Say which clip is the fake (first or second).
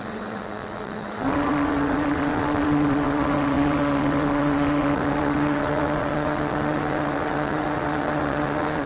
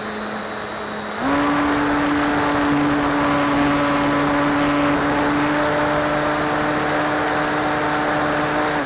first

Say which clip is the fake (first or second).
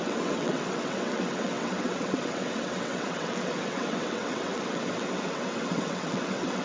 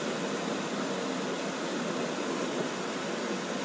first